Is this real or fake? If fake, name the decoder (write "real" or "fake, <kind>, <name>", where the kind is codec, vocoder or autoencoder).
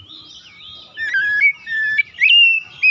real